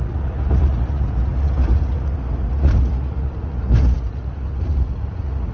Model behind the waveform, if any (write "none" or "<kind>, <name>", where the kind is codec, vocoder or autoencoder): vocoder, Vocos